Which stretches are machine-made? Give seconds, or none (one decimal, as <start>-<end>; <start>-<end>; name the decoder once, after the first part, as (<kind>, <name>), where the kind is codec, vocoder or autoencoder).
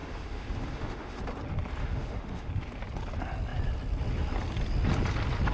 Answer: 0.0-1.2 (autoencoder, DAC-VAE); 1.8-2.5